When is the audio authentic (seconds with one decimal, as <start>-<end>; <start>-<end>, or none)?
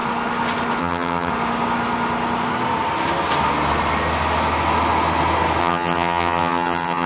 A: 0.0-0.8; 1.3-5.6